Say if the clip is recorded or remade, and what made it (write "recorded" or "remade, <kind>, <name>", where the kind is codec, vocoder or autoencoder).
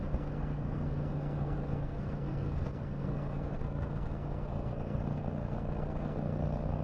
remade, codec, SNAC